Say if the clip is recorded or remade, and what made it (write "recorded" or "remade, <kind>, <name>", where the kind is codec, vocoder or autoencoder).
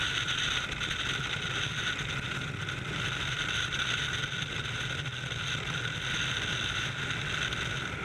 recorded